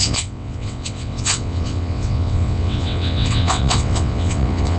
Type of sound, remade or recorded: remade